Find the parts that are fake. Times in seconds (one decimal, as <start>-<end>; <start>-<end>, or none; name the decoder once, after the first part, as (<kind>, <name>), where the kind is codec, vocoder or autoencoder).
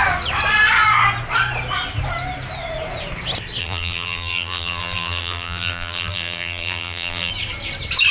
3.6-7.3 (vocoder, BigVGAN v2)